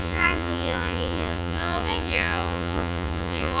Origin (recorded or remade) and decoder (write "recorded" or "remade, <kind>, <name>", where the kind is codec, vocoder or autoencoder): remade, vocoder, Vocos